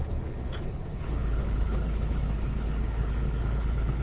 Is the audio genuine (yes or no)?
no